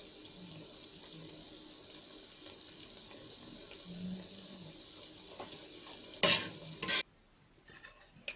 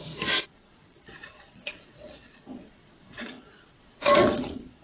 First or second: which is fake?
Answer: second